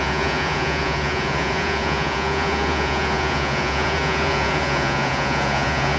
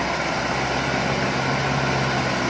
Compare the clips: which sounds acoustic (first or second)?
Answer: second